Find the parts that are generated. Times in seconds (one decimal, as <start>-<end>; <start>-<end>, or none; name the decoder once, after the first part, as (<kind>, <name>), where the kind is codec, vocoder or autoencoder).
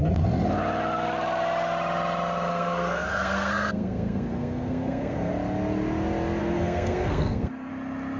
2.5-5.3 (codec, SNAC); 6.4-7.7